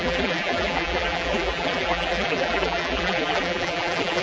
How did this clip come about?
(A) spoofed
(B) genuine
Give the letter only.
A